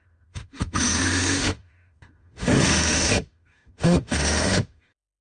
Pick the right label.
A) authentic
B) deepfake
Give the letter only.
B